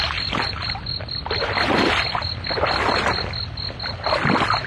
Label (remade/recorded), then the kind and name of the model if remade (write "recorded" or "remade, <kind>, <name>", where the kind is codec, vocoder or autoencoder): recorded